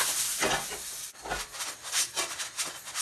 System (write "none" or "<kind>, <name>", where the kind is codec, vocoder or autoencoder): none